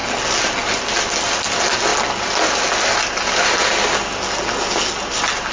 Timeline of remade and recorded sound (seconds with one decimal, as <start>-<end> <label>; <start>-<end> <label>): 0.0-5.5 recorded